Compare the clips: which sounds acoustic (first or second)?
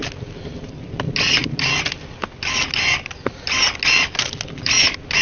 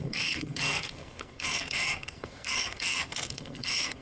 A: first